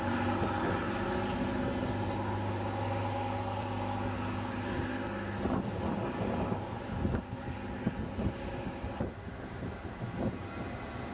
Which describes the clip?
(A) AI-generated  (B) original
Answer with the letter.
B